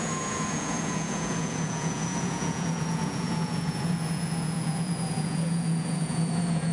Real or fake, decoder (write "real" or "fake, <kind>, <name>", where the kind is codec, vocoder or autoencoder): fake, vocoder, Vocos